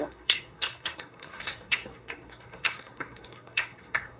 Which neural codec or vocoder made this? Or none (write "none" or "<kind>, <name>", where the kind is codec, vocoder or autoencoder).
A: codec, SNAC